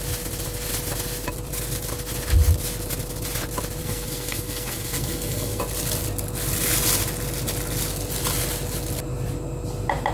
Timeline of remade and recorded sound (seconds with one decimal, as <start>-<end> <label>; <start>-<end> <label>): 0.0-3.8 recorded; 3.8-5.6 remade; 5.6-10.1 recorded